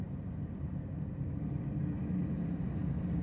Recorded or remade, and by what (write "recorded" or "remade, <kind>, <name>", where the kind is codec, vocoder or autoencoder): remade, vocoder, BigVGAN v2